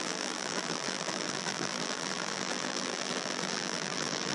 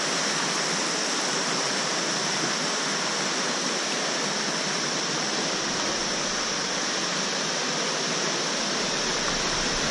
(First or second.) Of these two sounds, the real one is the second